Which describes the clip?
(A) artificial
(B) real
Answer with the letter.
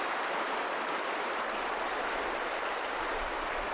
B